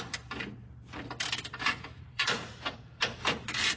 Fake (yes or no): yes